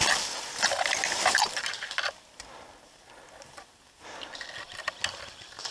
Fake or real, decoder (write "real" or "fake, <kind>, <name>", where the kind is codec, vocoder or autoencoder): real